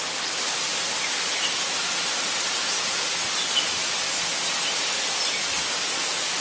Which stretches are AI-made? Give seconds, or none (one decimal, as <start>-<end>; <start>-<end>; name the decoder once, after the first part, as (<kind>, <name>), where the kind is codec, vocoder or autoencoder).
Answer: none

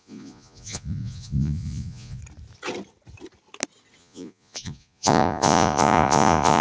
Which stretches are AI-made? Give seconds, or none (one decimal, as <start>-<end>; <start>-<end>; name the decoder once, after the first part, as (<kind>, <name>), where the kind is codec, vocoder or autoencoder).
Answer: 0.0-2.2 (vocoder, Vocos); 4.0-6.6

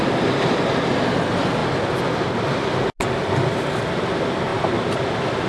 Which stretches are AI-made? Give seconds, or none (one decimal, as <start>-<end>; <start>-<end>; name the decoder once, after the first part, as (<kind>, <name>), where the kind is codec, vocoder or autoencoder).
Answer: none

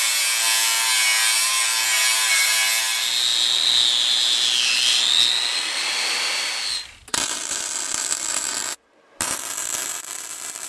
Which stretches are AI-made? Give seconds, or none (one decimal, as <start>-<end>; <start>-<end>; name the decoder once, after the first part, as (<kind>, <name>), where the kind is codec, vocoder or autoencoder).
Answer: none